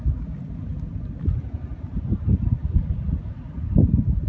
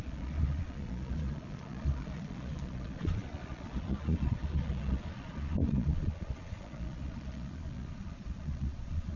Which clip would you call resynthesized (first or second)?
second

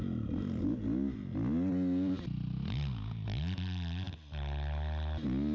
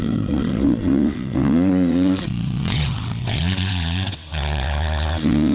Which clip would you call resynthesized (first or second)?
second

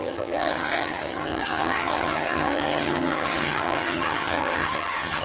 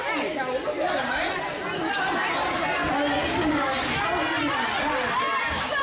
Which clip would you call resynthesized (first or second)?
first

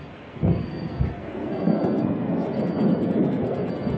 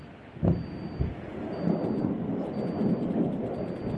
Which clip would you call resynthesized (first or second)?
first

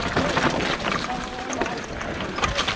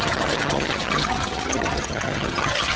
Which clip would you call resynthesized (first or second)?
second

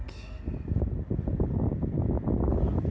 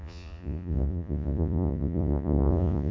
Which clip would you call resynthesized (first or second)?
second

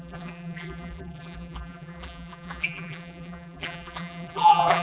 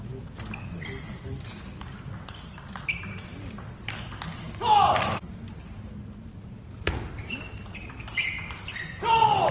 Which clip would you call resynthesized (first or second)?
first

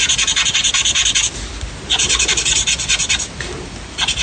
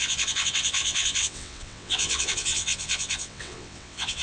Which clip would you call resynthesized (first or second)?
second